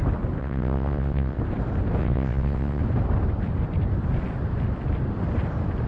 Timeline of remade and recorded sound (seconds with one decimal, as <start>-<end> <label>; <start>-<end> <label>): 0.0-0.4 recorded; 0.4-1.4 remade; 1.4-2.0 recorded; 2.0-2.8 remade; 2.8-5.9 recorded